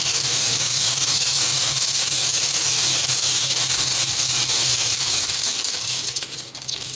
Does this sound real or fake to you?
fake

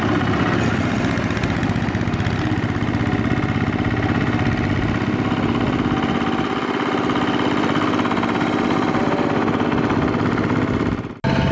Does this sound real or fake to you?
real